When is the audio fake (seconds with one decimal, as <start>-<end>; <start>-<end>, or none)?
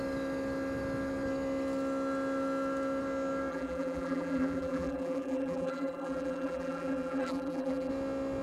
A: 3.5-7.9